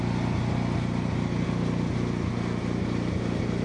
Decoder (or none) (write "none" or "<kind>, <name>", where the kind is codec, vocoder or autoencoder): none